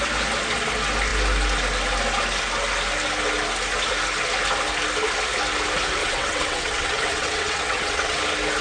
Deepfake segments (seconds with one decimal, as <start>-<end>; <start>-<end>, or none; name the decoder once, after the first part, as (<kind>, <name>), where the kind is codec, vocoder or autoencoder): 6.0-8.2 (vocoder, WaveNeXt)